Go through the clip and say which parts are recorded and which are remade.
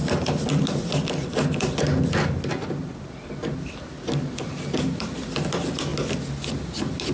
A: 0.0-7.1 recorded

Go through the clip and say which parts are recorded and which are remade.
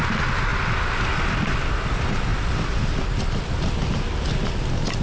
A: 0.0-2.3 recorded; 2.3-3.0 remade; 3.0-3.8 recorded; 3.8-4.6 remade; 4.6-5.0 recorded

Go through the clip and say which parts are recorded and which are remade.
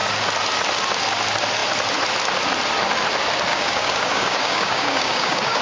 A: 0.0-3.5 recorded; 3.5-5.6 remade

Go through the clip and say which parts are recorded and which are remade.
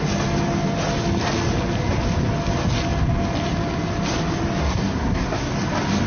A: 0.0-4.6 recorded; 4.6-5.5 remade; 5.5-6.1 recorded